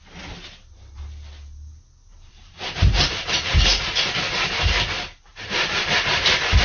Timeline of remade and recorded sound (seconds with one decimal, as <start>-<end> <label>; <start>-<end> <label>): 0.0-2.1 recorded; 2.1-4.2 remade; 4.2-5.3 recorded; 5.3-6.6 remade